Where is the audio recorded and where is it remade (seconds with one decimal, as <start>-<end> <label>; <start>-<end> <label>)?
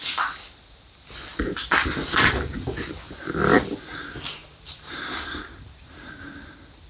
0.0-4.4 recorded; 4.4-6.2 remade; 6.2-6.9 recorded